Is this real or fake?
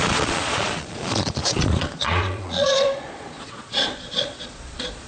fake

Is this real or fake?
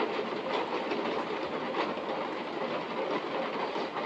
real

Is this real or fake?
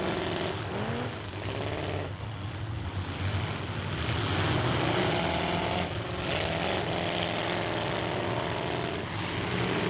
real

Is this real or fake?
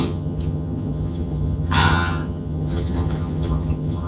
fake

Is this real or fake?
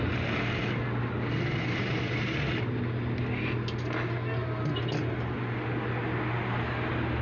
real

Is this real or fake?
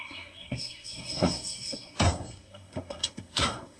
fake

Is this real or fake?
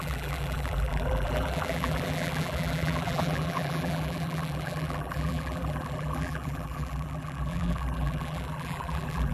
fake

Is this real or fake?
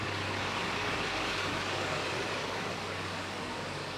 fake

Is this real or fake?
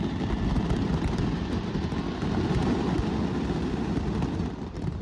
fake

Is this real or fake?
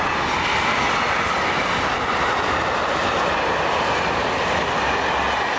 real